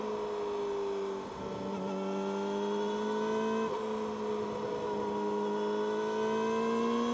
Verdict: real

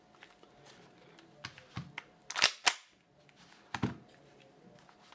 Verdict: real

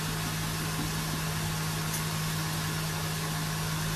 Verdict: real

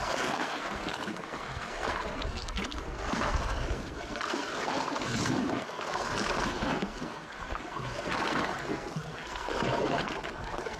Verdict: fake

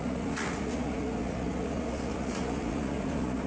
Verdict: fake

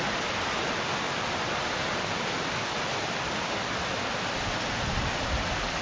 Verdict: real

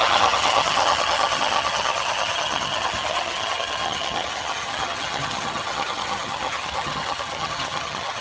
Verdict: fake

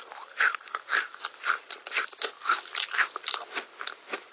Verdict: real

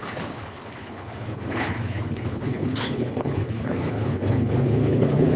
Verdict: fake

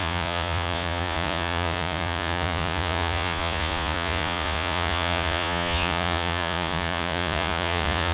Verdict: fake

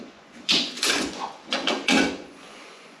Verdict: fake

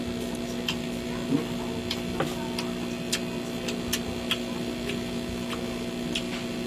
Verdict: real